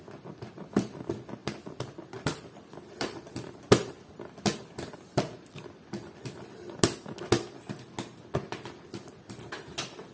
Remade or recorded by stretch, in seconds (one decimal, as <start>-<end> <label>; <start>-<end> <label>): 0.0-1.4 recorded; 1.4-6.2 remade; 6.2-10.1 recorded